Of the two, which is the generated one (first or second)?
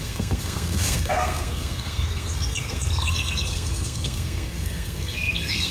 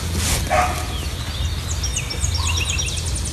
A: first